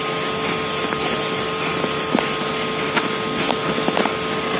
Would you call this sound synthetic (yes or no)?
no